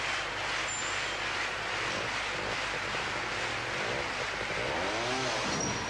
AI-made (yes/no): no